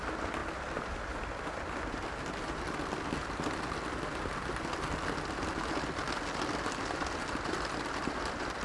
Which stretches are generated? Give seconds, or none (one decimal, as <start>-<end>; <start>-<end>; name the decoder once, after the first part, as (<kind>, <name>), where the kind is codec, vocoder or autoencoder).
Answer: none